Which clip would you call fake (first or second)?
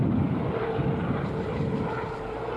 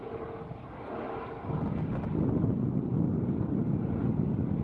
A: first